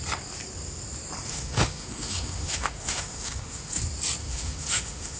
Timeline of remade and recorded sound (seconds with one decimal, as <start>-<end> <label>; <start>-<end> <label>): 0.0-1.3 recorded; 1.3-3.8 remade; 3.8-4.2 recorded; 4.2-5.2 remade